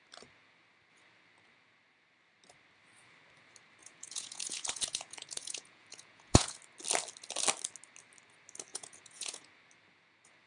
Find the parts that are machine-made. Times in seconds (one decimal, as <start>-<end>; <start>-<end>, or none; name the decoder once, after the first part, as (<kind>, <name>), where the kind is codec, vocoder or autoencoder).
3.8-6.6 (vocoder, Vocos); 8.7-9.5